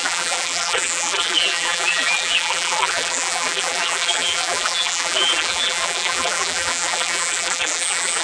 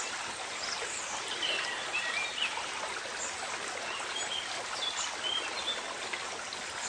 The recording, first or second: second